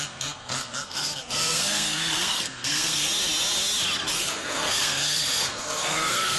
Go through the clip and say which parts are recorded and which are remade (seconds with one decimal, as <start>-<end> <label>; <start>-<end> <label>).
0.0-3.1 remade; 3.1-4.1 recorded; 4.1-6.4 remade